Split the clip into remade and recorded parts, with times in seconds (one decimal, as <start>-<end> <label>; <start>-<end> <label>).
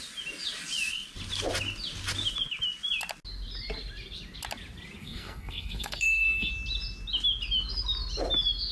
0.0-5.0 recorded; 5.0-6.5 remade; 6.5-8.7 recorded